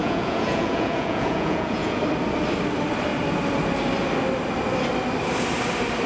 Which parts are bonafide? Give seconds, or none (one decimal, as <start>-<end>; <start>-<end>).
2.0-6.1